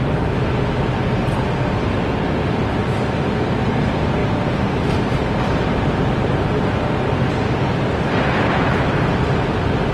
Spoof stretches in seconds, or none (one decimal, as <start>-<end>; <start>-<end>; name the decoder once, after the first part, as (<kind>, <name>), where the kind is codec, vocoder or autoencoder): 4.2-6.4 (vocoder, BigVGAN v2)